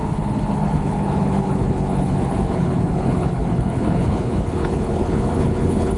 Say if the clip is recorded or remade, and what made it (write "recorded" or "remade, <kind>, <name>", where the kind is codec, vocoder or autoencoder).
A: remade, codec, HILCodec